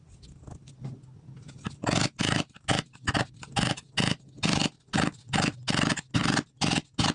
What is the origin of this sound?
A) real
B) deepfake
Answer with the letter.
A